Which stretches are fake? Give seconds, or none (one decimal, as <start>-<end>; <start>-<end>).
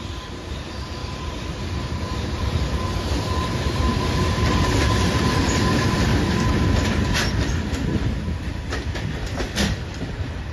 0.0-6.1; 7.3-10.5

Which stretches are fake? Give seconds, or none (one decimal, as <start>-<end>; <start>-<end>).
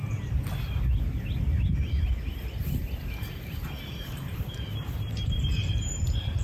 3.8-6.4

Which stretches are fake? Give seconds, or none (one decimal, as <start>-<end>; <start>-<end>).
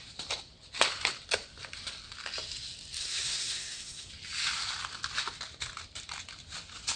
3.0-4.1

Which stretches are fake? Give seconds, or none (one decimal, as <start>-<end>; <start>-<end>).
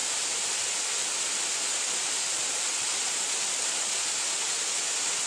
0.0-3.2